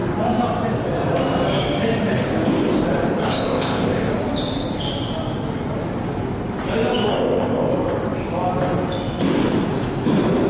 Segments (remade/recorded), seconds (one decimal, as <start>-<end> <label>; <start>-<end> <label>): 0.0-3.3 recorded; 3.3-4.1 remade; 4.1-7.1 recorded; 7.1-7.7 remade; 7.7-10.5 recorded